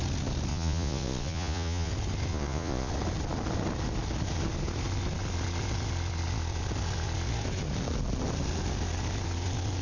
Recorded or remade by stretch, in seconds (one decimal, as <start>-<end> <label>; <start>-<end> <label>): 0.0-0.5 recorded; 0.5-1.9 remade; 1.9-2.3 recorded; 2.3-2.9 remade; 2.9-9.8 recorded